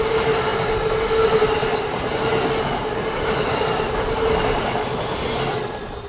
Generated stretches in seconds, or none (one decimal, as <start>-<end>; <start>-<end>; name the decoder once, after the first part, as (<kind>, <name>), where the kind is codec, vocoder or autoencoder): none